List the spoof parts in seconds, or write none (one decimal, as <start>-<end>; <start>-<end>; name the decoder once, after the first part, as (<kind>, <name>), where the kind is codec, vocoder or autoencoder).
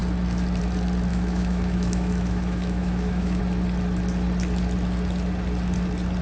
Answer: 1.1-3.4 (autoencoder, DAC-VAE)